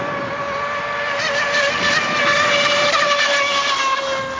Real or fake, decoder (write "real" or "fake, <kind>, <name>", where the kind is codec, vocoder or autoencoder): real